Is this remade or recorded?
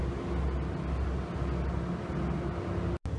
recorded